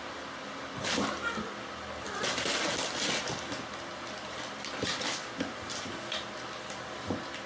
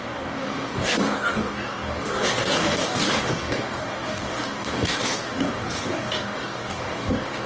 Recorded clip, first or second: first